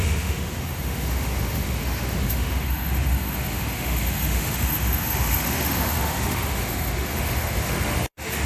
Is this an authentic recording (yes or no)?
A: no